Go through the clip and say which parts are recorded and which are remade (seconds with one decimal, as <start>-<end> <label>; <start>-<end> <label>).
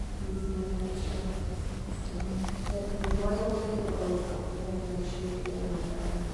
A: 0.0-0.4 remade; 0.4-1.2 recorded; 1.2-1.9 remade; 1.9-2.9 recorded; 2.9-3.7 remade; 3.7-5.5 recorded; 5.5-6.3 remade